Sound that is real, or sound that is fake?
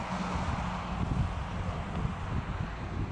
real